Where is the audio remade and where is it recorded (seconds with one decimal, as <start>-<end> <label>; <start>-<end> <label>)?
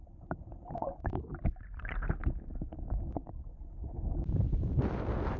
0.0-5.4 recorded